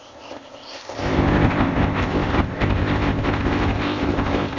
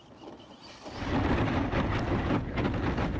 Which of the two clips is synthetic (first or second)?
first